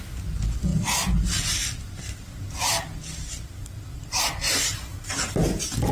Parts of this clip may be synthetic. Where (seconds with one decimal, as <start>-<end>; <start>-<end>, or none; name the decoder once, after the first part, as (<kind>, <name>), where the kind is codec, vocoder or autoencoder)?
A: none